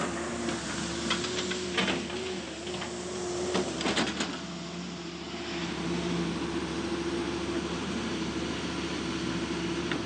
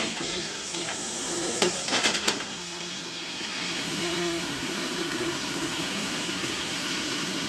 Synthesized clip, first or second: second